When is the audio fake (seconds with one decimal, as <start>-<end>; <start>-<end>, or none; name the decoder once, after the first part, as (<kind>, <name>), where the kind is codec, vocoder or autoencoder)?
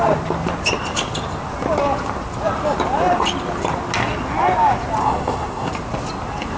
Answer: 5.0-5.7 (codec, SNAC)